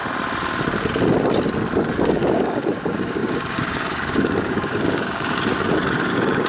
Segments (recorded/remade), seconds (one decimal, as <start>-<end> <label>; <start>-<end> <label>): 0.0-1.9 recorded; 1.9-6.5 remade